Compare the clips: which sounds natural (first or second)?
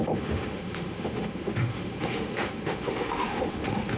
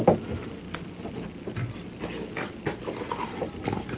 second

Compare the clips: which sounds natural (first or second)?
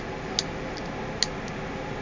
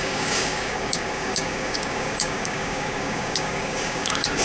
first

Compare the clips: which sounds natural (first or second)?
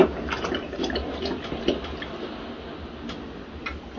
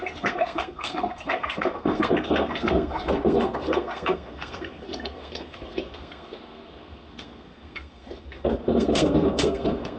first